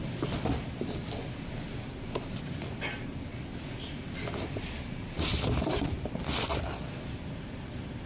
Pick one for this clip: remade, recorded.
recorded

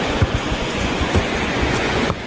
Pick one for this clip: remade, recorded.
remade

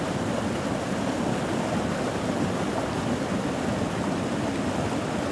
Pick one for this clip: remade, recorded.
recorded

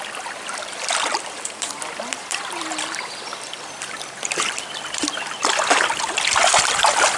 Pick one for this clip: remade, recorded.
remade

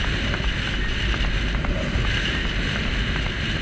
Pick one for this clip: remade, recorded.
recorded